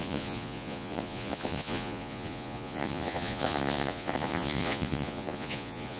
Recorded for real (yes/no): no